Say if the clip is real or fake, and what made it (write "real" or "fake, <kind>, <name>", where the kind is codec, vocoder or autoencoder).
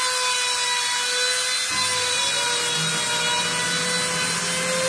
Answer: real